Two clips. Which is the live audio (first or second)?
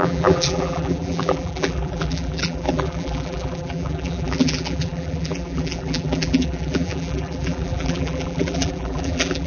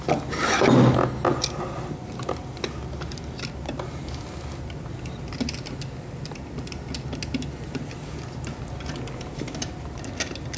second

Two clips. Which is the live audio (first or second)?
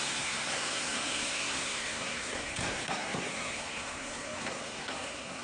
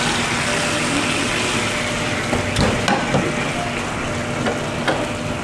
second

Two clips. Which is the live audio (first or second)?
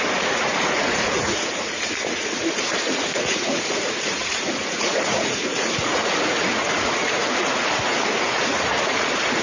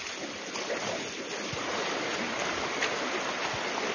second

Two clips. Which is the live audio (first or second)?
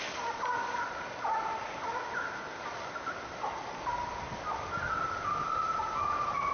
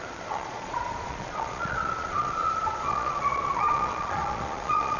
first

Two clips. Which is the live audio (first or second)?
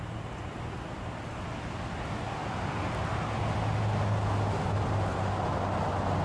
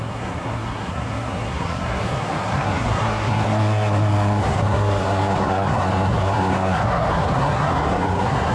first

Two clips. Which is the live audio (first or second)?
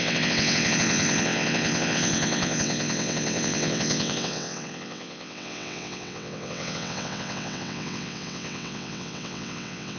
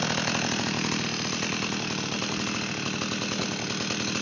second